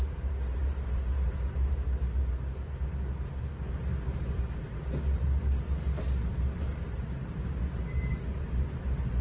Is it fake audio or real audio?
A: real